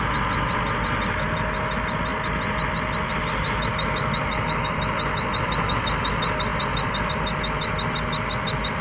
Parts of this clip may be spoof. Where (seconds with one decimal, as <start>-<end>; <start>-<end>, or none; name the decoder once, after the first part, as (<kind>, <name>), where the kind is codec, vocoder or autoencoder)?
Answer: none